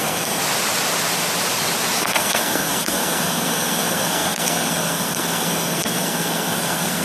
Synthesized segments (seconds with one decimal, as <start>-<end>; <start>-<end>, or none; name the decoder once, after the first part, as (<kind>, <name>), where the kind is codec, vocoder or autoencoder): 0.0-0.4 (codec, SNAC); 2.0-7.0

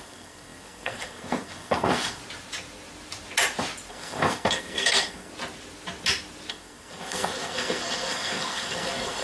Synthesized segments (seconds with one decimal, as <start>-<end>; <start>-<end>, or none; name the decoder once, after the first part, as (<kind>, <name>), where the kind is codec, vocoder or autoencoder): 0.0-2.2 (codec, SNAC); 3.9-5.3; 6.5-9.2

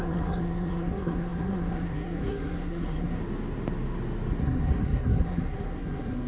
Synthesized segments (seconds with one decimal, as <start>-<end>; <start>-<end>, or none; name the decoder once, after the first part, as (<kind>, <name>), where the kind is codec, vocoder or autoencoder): 0.0-3.2 (codec, SNAC); 4.4-6.3

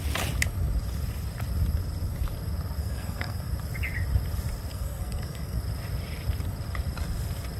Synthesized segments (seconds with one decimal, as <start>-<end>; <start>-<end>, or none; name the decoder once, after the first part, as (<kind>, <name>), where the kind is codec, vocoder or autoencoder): 2.8-3.5 (codec, SNAC); 4.7-5.6

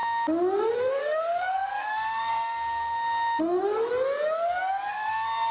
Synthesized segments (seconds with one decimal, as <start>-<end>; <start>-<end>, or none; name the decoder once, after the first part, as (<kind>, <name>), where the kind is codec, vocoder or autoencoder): 0.6-3.9 (codec, SNAC); 4.9-5.5

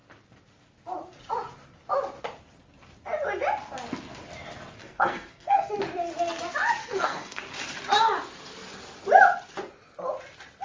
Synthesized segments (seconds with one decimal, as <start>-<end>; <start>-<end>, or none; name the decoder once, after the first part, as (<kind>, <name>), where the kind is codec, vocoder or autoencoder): 4.8-5.7 (codec, SNAC); 6.8-7.4

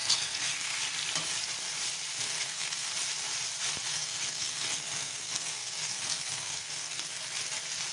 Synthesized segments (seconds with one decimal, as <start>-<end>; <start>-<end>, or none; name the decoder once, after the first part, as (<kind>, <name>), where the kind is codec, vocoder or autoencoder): 0.0-0.8 (codec, SNAC); 2.2-2.9; 3.9-7.2

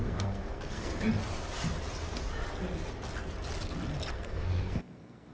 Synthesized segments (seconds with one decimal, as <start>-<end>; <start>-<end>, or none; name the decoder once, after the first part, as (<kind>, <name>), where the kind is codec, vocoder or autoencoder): 0.0-0.9 (codec, SNAC); 4.1-5.3